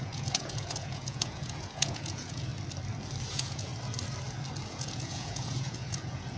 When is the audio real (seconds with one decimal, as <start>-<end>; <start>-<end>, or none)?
2.5-3.3; 3.7-4.6